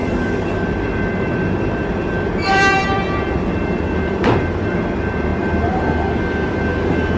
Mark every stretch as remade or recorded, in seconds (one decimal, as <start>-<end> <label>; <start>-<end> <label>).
0.0-3.2 remade; 3.2-7.2 recorded

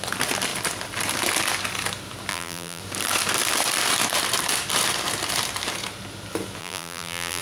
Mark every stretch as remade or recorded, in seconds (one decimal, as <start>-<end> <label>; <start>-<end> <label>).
0.0-2.3 recorded; 2.3-2.8 remade; 2.8-6.6 recorded; 6.6-7.4 remade